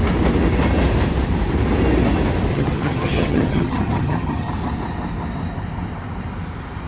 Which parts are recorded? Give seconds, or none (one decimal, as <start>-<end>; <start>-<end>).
0.0-2.5; 4.5-6.9